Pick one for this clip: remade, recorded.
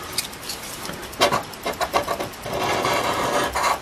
recorded